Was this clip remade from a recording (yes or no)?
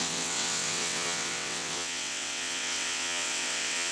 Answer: yes